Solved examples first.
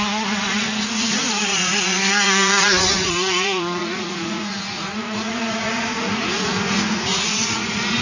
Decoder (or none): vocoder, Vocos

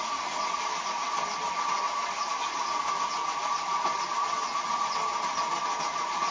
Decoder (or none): none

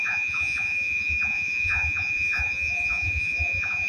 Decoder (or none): vocoder, Vocos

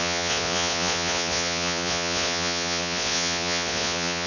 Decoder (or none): vocoder, Vocos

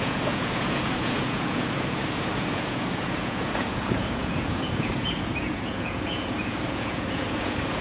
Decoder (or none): vocoder, Vocos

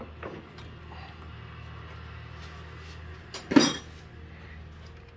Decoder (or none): none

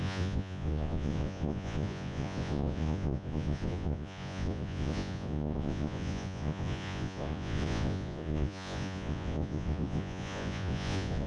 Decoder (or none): vocoder, Vocos